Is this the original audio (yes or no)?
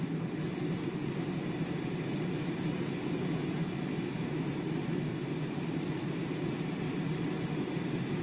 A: yes